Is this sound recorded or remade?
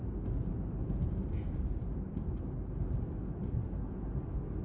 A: recorded